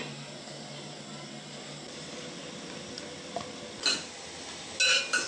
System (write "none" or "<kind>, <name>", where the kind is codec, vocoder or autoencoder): none